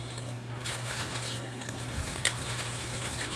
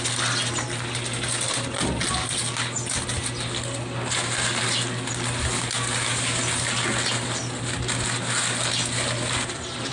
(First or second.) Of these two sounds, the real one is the second